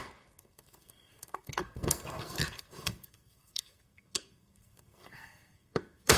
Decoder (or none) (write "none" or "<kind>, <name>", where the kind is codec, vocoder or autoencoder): codec, SNAC